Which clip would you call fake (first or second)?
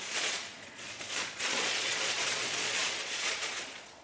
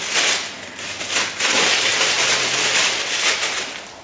first